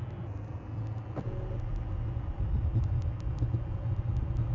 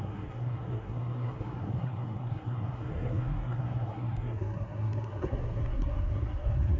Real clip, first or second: first